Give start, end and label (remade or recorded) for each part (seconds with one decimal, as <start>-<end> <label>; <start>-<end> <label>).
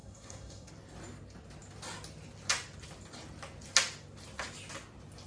0.0-0.7 remade; 0.7-5.3 recorded